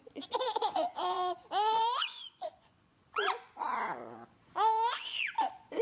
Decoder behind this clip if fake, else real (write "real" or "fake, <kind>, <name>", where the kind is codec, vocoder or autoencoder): fake, vocoder, Vocos